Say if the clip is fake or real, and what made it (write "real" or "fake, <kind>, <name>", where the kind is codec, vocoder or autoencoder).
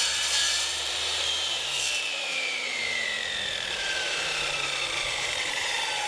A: fake, vocoder, BigVGAN v2